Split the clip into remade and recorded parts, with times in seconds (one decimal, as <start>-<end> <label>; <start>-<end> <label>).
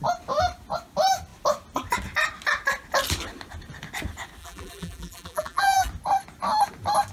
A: 0.0-4.4 recorded; 4.4-5.9 remade; 5.9-7.1 recorded